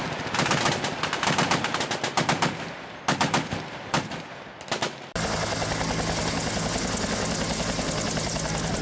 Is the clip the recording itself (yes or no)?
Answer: yes